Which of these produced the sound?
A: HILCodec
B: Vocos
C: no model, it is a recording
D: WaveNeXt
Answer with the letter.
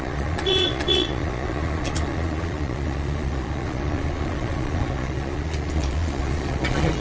B